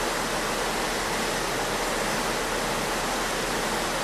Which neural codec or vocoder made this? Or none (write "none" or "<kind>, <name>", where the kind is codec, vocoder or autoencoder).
none